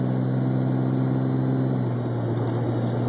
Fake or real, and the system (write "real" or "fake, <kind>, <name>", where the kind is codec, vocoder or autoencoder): real